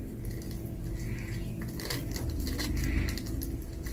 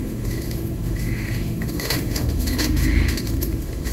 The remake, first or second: second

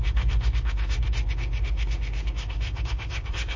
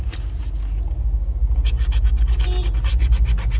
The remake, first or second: first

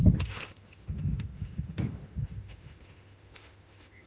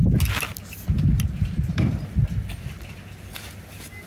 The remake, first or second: first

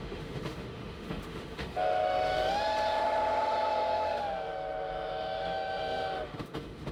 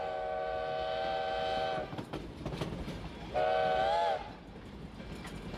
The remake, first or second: first